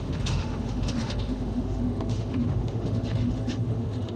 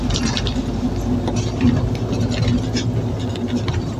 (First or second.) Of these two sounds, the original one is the second